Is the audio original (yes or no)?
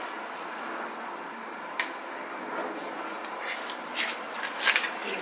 yes